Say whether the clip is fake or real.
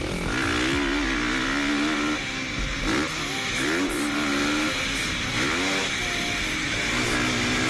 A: real